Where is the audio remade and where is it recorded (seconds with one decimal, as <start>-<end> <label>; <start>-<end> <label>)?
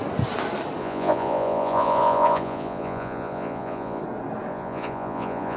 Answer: 0.0-0.8 recorded; 0.8-4.0 remade; 4.0-4.5 recorded; 4.5-5.6 remade